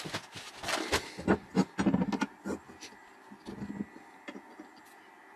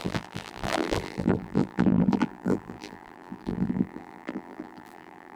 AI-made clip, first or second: second